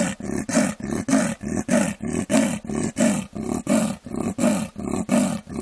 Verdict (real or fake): real